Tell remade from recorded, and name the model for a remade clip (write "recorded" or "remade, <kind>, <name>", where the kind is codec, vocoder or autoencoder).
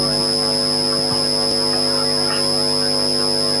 recorded